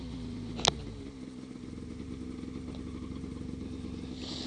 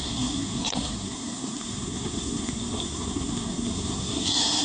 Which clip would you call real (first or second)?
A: first